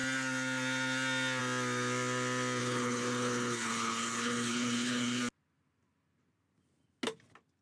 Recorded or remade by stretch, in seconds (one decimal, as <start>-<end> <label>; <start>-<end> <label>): 0.0-2.6 recorded; 2.6-5.2 remade; 5.2-7.6 recorded